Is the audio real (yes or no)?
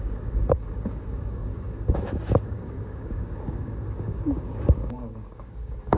no